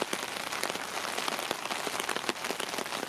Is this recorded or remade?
recorded